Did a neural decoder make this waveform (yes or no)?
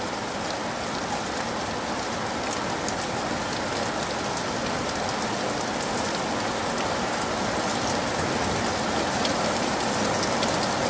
no